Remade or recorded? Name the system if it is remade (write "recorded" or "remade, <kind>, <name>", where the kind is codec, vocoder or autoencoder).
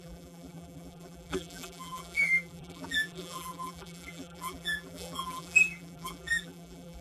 remade, vocoder, BigVGAN v2